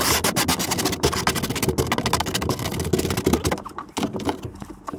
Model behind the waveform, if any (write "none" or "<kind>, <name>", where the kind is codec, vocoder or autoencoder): none